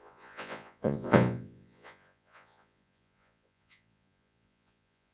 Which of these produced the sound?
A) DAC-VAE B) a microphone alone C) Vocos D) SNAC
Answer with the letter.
C